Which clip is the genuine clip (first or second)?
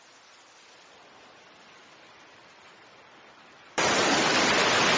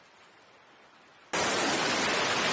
second